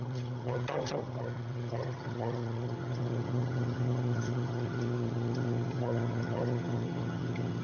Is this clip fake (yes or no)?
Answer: yes